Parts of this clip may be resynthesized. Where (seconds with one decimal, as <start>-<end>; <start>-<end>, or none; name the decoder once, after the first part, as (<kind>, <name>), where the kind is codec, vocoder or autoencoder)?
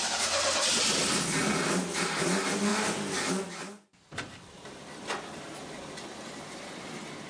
none